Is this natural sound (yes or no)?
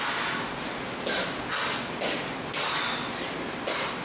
yes